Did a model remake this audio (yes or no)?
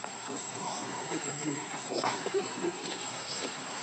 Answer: yes